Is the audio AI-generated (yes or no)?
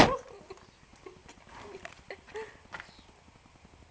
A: no